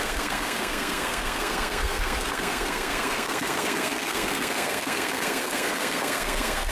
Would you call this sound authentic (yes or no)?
no